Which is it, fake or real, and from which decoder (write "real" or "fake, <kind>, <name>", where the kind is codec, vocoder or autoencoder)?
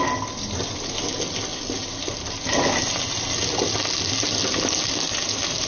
real